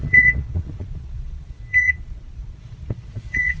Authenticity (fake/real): fake